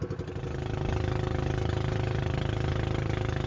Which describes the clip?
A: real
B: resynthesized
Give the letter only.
A